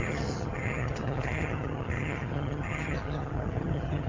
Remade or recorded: remade